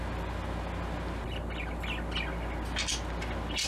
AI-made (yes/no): no